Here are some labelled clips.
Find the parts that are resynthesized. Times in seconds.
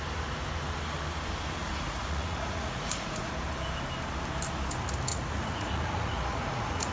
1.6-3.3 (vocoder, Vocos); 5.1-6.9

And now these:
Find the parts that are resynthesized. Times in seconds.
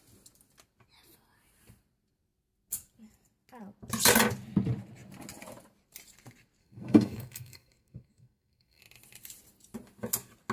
6.6-8.8 (codec, SNAC)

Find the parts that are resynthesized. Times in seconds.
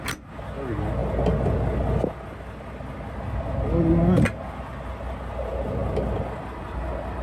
none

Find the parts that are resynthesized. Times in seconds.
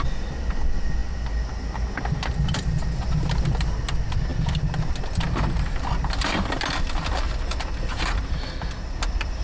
none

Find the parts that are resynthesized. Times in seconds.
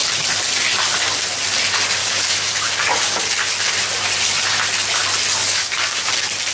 2.0-3.2 (codec, DAC); 5.4-6.1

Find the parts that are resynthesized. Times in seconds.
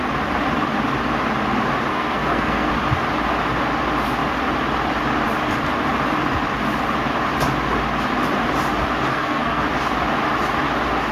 1.9-2.7 (codec, SNAC); 9.1-9.6